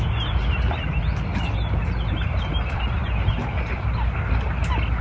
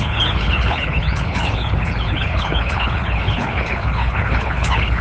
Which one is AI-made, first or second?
second